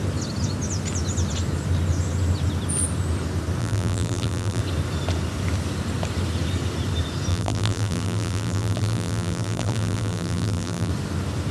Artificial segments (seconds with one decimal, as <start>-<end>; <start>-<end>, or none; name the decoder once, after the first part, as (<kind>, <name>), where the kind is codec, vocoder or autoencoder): 3.6-4.6 (vocoder, BigVGAN v2); 7.3-10.9